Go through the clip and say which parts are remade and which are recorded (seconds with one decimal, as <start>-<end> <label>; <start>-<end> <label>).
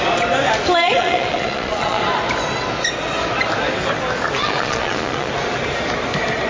0.0-0.8 recorded; 0.8-2.0 remade; 2.0-4.4 recorded; 4.4-5.3 remade; 5.3-6.5 recorded